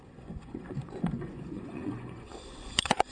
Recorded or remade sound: remade